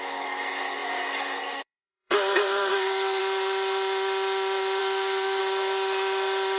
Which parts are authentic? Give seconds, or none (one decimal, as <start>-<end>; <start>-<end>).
3.2-4.8; 5.4-6.6